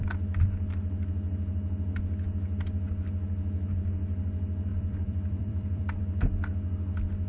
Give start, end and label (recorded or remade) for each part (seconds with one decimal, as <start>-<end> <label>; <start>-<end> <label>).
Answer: 0.0-4.7 recorded; 4.7-6.0 remade; 6.0-7.3 recorded